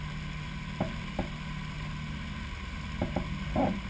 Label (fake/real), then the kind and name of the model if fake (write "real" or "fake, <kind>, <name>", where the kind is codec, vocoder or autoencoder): real